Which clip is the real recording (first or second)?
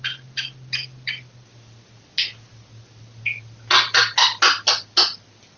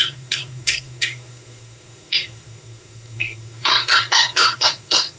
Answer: first